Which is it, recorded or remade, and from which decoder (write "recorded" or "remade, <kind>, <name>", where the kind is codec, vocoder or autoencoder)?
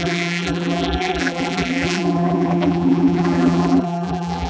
remade, vocoder, BigVGAN v2